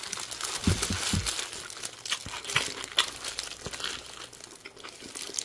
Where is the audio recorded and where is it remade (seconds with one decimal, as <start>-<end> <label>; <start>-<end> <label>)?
0.0-5.4 recorded